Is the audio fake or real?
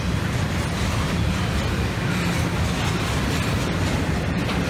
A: real